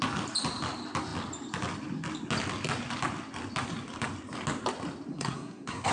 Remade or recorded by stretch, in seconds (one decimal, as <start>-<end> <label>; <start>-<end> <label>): 0.0-5.1 recorded; 5.1-5.9 remade